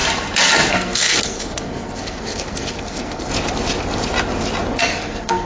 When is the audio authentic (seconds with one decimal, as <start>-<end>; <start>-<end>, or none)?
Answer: 0.0-0.7; 3.3-4.8

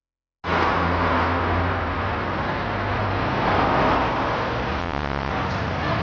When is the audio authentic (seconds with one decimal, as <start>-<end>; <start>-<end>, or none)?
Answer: 0.0-4.8; 5.3-6.0

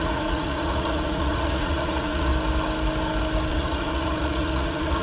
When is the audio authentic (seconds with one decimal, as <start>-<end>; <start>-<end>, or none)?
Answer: 2.3-3.5